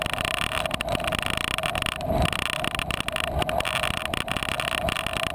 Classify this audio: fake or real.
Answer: real